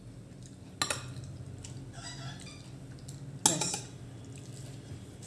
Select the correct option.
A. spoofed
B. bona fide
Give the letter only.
B